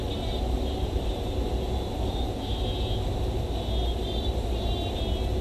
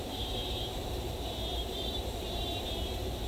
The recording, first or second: first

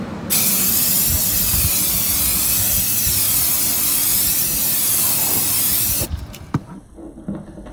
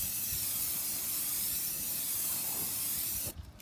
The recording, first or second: first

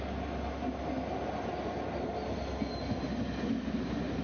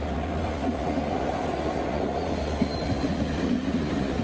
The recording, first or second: first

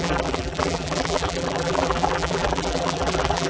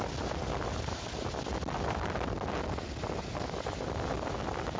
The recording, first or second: second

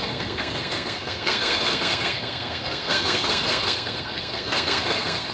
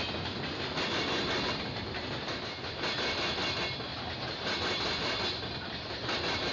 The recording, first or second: second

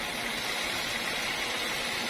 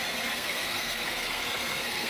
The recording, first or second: first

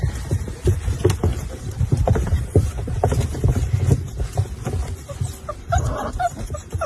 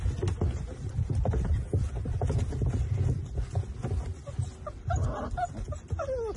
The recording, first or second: second